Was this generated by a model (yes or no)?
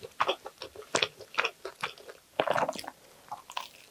no